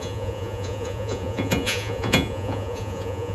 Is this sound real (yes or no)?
no